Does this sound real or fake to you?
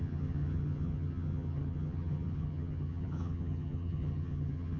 fake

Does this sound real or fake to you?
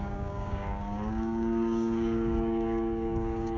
fake